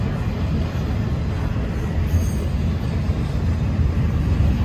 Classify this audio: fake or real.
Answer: real